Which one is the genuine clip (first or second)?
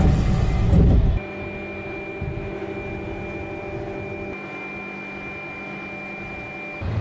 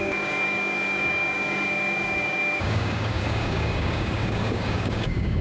first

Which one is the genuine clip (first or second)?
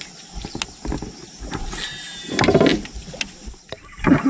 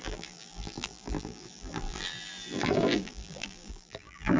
first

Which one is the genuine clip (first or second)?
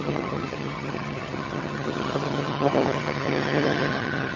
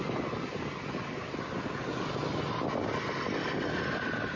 second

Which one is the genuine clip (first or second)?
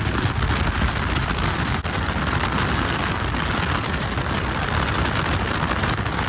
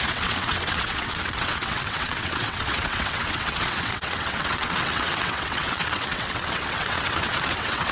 first